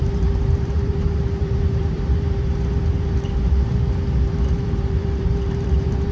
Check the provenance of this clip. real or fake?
fake